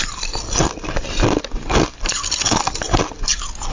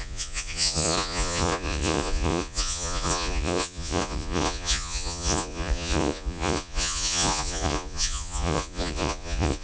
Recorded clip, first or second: first